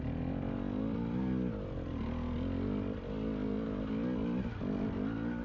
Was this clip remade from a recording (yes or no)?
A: no